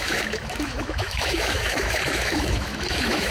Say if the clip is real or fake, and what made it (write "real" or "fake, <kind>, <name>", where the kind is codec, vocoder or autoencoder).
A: fake, autoencoder, DAC-VAE